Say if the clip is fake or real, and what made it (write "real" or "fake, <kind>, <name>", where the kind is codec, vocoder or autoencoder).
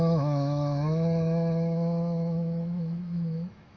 fake, autoencoder, DAC-VAE